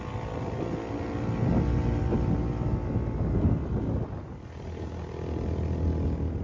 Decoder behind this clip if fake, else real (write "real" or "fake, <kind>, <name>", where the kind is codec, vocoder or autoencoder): real